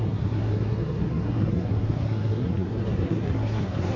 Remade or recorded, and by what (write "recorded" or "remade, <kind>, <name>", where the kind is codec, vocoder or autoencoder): remade, codec, SNAC